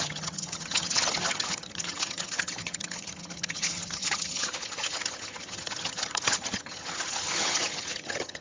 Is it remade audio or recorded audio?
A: remade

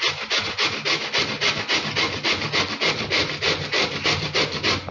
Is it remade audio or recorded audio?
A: recorded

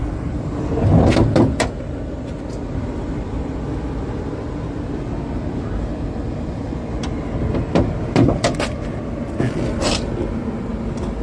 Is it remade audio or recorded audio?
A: recorded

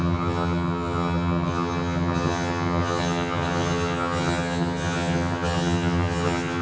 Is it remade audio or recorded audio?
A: remade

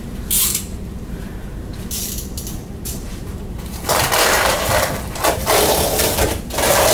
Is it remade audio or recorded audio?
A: remade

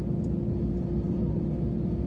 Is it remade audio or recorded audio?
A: recorded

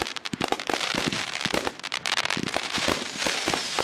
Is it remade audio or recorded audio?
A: remade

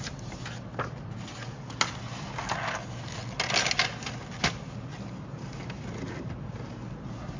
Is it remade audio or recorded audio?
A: recorded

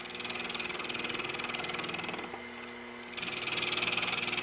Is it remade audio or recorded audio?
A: recorded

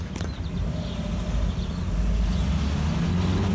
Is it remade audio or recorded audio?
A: recorded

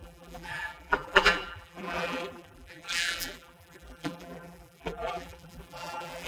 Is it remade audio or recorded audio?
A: remade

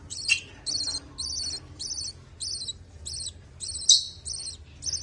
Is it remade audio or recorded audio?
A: recorded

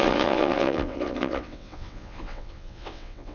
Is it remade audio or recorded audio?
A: remade